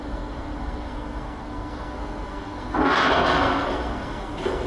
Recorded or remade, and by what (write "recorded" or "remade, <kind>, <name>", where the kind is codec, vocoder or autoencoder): remade, codec, SNAC